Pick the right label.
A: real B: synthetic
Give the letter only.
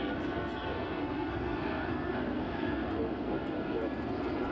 B